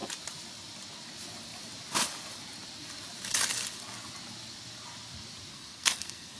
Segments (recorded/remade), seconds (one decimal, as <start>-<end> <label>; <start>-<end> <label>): 0.0-5.5 recorded; 5.5-6.4 remade

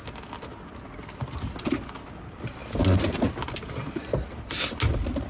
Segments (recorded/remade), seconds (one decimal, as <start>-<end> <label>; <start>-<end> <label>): 0.0-5.3 recorded

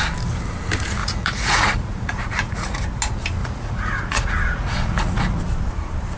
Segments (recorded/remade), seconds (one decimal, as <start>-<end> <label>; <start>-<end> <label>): 0.0-1.0 recorded; 1.0-2.8 remade; 2.8-3.4 recorded; 3.4-5.4 remade; 5.4-6.2 recorded

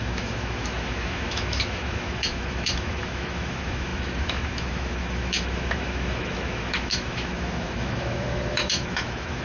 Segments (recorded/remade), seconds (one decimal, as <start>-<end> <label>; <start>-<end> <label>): 0.0-9.4 remade

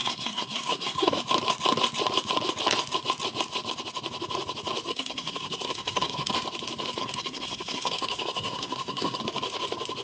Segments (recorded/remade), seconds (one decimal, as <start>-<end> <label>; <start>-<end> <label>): 0.0-1.2 remade; 1.2-4.9 recorded; 4.9-6.3 remade; 6.3-7.0 recorded; 7.0-9.2 remade; 9.2-10.0 recorded

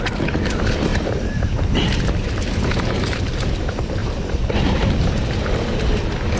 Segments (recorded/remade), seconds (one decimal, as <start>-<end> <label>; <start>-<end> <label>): 0.0-0.9 recorded; 0.9-3.5 remade; 3.5-4.0 recorded; 4.0-5.8 remade; 5.8-6.4 recorded